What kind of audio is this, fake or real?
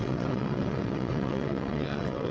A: fake